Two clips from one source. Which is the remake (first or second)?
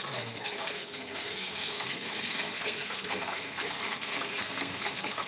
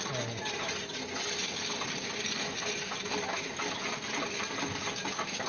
first